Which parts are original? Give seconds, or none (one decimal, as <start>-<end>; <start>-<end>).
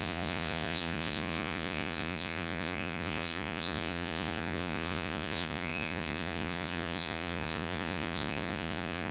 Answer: none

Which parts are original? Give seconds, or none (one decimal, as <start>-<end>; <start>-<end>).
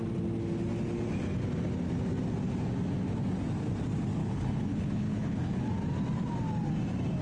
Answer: 0.0-4.2; 5.6-7.2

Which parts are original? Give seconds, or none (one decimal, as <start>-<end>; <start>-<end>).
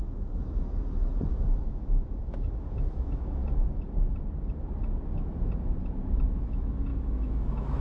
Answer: 3.4-6.3